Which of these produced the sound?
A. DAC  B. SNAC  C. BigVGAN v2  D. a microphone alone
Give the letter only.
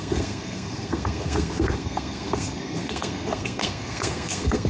B